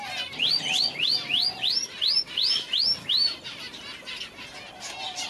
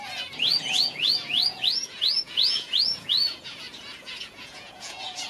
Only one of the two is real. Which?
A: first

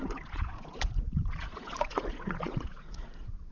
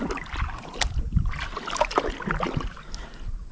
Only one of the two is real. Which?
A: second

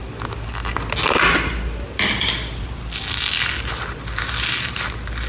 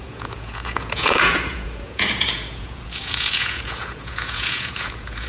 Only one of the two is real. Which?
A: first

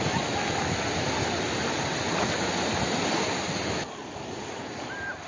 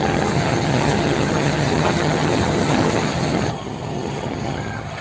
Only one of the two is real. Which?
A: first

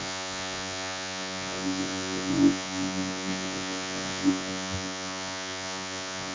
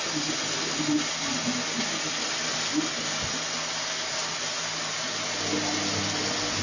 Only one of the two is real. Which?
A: second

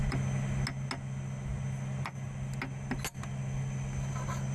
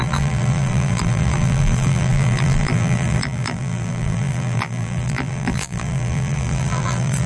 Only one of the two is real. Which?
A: first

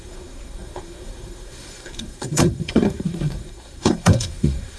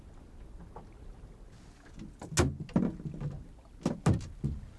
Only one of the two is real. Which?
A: second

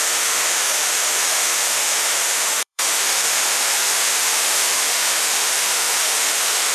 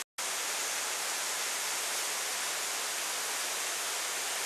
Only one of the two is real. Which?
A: second